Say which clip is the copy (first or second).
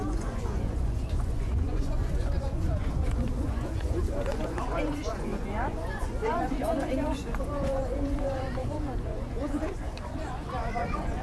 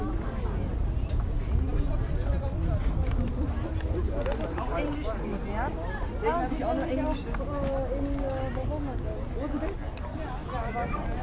first